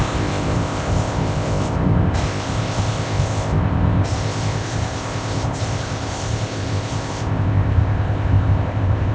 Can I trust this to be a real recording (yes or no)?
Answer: no